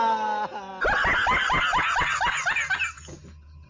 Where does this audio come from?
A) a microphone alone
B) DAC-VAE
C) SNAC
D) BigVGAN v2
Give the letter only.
A